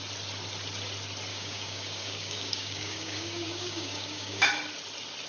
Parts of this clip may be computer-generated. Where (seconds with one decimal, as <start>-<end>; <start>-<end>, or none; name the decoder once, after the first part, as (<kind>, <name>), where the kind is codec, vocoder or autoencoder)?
1.3-4.5 (codec, DAC)